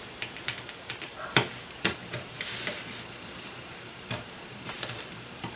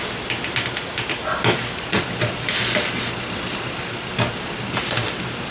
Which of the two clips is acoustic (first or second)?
second